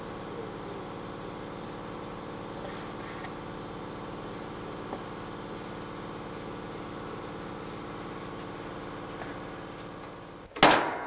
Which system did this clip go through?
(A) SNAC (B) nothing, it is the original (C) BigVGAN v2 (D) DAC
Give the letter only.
B